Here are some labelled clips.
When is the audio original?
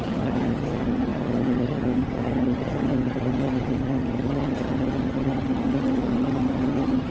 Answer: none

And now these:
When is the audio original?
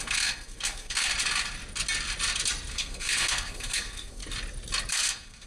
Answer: 1.1-2.7; 4.2-4.9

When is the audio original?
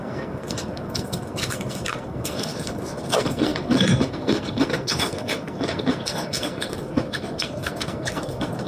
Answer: none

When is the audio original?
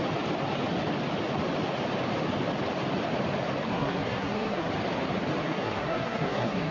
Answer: 0.0-3.7; 4.7-5.4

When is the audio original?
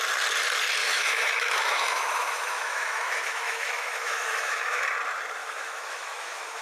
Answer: 0.0-0.8; 4.8-5.4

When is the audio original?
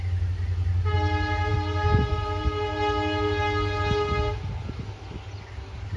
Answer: 0.0-6.0